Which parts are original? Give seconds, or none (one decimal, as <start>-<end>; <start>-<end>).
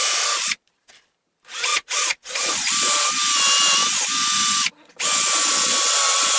0.0-1.7; 2.3-6.4